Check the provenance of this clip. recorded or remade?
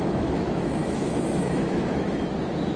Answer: remade